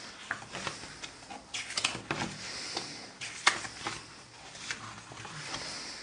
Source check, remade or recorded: recorded